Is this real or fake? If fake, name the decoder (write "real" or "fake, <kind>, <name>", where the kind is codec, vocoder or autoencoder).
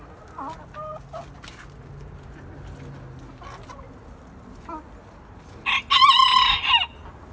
real